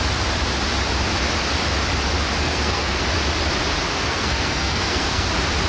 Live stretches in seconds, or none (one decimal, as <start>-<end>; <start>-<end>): 0.0-2.4; 3.0-4.1; 5.3-5.7